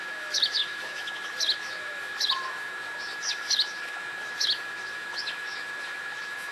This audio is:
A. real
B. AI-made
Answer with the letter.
B